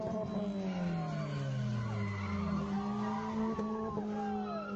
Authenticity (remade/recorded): recorded